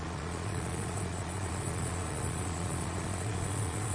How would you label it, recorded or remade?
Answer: remade